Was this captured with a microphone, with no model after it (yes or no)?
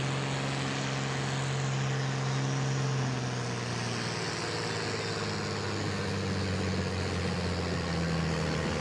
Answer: yes